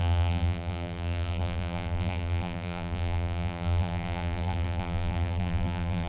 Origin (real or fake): fake